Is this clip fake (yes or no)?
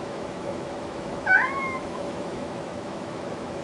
yes